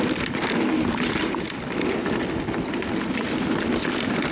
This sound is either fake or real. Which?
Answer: real